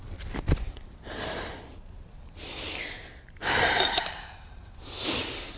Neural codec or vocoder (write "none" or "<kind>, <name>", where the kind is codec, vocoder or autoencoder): vocoder, BigVGAN v2